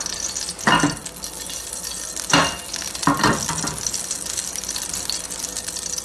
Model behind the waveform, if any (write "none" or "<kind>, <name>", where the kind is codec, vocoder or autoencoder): none